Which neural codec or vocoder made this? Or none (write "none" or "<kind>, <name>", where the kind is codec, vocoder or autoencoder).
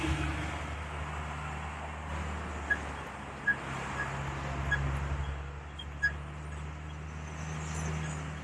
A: none